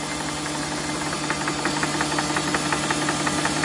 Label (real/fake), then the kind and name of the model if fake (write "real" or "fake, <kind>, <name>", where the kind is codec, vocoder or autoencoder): real